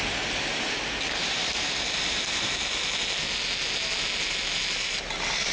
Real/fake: real